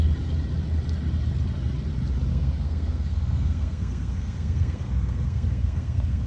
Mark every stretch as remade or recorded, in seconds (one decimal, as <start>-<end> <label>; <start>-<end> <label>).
0.0-2.3 recorded; 2.3-6.3 remade